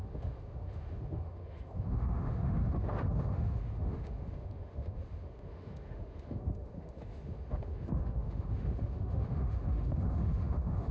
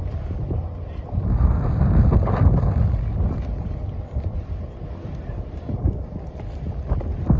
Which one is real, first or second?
second